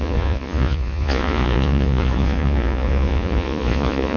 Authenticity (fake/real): fake